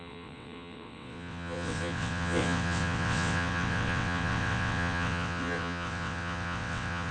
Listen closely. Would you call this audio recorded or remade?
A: remade